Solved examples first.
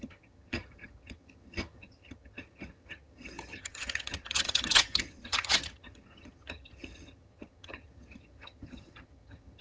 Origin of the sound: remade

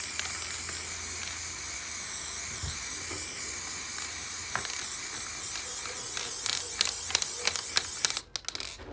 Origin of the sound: recorded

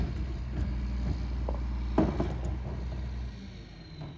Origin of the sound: recorded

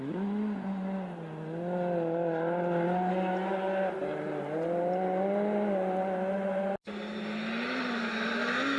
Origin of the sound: recorded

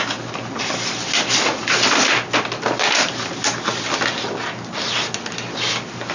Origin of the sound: recorded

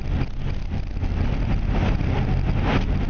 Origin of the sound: recorded